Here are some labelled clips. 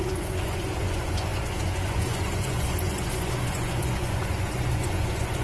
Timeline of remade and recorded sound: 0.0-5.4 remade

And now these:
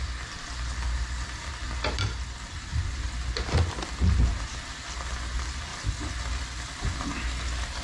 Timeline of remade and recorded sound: 0.0-2.7 recorded; 2.7-4.3 remade; 4.3-5.7 recorded; 5.7-6.6 remade; 6.6-7.8 recorded

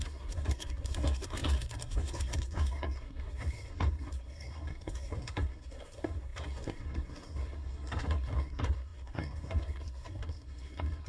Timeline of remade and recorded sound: 0.0-11.1 remade